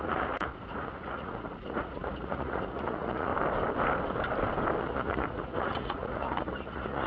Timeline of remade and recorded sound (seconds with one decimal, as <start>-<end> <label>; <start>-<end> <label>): 0.0-3.3 remade; 3.3-4.8 recorded; 4.8-7.1 remade